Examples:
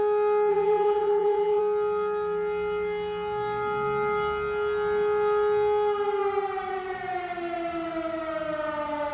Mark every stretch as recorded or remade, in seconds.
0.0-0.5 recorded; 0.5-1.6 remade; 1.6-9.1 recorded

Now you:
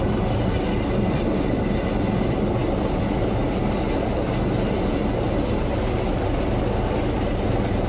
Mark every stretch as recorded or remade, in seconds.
0.0-7.9 recorded

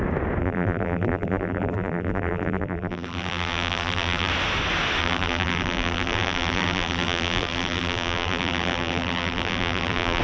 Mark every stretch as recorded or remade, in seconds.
0.0-0.4 recorded; 0.4-4.3 remade; 4.3-5.0 recorded; 5.0-10.2 remade

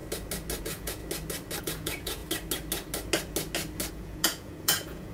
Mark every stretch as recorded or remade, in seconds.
0.0-0.6 recorded; 0.6-1.0 remade; 1.0-1.6 recorded; 1.6-2.2 remade; 2.2-3.9 recorded; 3.9-5.1 remade

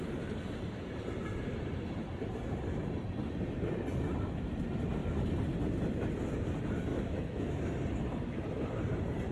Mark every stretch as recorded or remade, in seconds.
0.0-6.9 recorded; 6.9-7.7 remade; 7.7-9.3 recorded

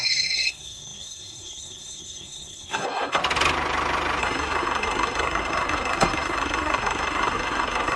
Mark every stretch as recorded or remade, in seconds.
0.0-3.2 remade; 3.2-4.2 recorded; 4.2-8.0 remade

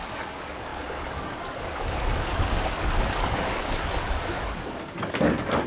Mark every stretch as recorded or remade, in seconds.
0.0-5.7 remade